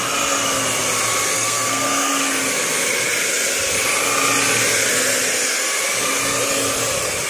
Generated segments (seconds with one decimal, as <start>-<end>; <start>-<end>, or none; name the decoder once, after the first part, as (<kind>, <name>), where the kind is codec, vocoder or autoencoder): 1.3-2.1 (codec, SNAC)